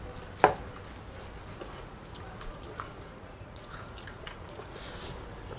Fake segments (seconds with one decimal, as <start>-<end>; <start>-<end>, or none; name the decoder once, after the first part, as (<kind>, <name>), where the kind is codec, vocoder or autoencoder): 1.4-4.8 (vocoder, Vocos)